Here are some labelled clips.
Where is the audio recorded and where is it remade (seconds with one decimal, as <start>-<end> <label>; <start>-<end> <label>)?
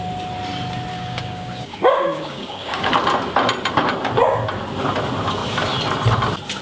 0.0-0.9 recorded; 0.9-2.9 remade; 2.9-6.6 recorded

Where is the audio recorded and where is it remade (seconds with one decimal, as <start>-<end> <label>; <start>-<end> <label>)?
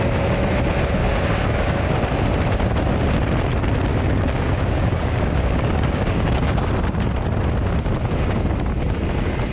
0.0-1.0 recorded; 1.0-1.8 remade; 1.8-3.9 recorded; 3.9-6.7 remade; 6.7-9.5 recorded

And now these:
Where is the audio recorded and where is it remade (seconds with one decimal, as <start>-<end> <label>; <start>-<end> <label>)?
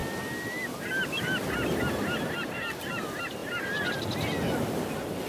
0.0-5.3 recorded